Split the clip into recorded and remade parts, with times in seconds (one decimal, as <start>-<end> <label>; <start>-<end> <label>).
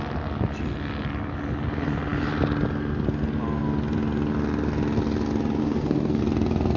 0.0-5.6 recorded; 5.6-6.2 remade; 6.2-6.8 recorded